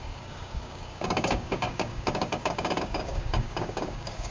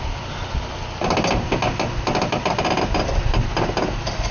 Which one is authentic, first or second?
second